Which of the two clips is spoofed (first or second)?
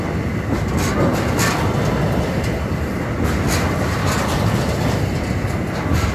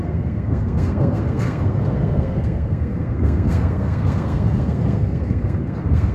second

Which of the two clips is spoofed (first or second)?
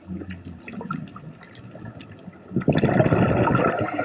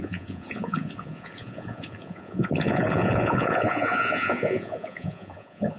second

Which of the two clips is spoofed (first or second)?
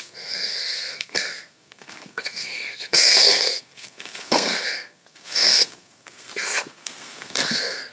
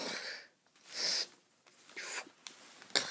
first